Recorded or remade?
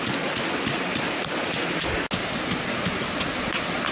recorded